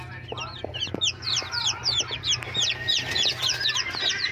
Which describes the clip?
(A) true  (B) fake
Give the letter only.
A